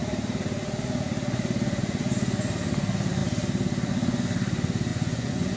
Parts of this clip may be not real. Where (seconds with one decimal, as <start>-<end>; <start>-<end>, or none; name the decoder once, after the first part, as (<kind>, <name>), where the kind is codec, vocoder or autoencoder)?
4.9-5.6 (vocoder, Vocos)

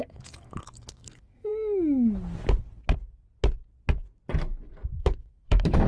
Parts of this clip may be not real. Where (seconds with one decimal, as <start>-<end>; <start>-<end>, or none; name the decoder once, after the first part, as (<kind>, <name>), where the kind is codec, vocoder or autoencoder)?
0.0-1.5 (autoencoder, DAC-VAE); 5.0-5.9

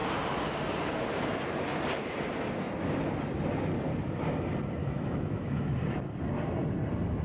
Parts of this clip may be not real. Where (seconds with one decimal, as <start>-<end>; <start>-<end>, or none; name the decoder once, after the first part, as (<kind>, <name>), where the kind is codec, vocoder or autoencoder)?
4.8-5.7 (autoencoder, DAC-VAE)